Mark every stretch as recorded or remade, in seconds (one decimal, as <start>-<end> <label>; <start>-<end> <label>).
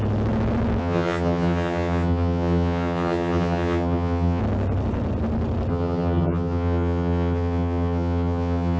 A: 0.0-0.8 recorded; 0.8-4.4 remade; 4.4-5.7 recorded; 5.7-8.8 remade